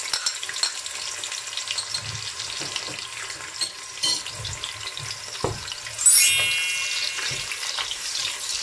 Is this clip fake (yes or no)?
no